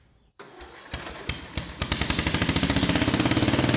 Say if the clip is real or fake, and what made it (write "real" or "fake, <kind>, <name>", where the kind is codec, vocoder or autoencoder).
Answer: real